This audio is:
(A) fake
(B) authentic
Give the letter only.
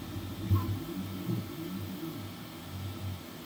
B